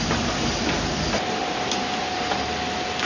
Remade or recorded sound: recorded